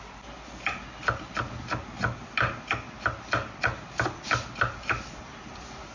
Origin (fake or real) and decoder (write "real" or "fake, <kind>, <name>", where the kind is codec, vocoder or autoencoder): real